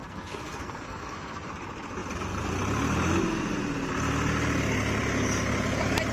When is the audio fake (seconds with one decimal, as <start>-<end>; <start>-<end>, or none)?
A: 0.0-1.5